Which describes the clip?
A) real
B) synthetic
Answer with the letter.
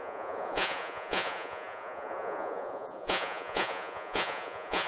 B